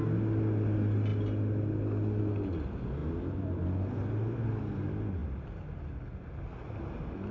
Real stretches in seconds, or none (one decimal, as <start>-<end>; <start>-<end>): 0.0-7.3